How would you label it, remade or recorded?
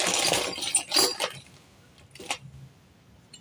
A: recorded